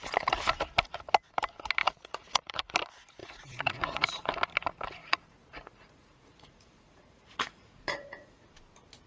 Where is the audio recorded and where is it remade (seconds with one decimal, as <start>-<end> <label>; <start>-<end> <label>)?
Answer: 0.0-1.8 recorded; 1.8-2.7 remade; 2.7-3.2 recorded; 3.2-4.3 remade; 4.3-5.0 recorded; 5.0-8.5 remade; 8.5-9.1 recorded